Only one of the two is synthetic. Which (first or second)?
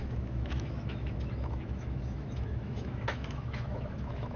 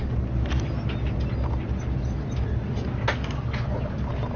first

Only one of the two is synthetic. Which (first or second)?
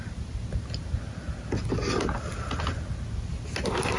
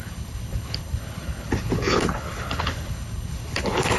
second